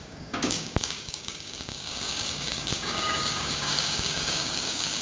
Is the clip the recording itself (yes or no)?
no